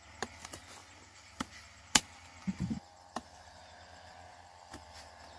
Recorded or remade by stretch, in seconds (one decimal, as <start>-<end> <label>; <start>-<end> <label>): 0.0-4.3 remade; 4.3-5.4 recorded